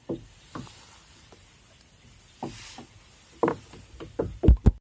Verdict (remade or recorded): recorded